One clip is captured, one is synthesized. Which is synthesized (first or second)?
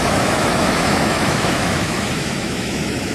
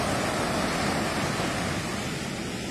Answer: first